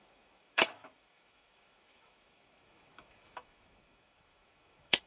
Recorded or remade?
remade